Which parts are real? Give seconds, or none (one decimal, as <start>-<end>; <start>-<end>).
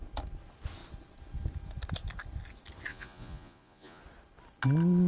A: 0.0-2.9; 4.0-5.1